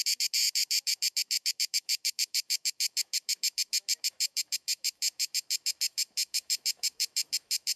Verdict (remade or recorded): remade